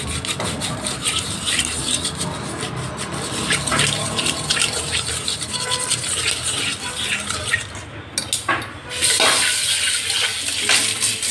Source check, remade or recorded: recorded